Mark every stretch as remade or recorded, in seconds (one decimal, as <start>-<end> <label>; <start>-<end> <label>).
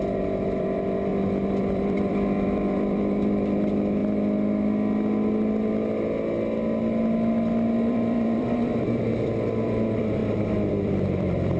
0.0-1.1 remade; 1.1-1.6 recorded; 1.6-4.0 remade; 4.0-7.9 recorded; 7.9-10.2 remade; 10.2-10.7 recorded; 10.7-11.6 remade